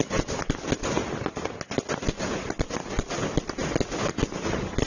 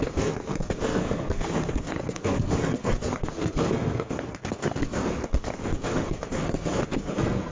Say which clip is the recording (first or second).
first